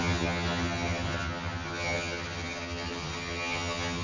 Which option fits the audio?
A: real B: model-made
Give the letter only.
B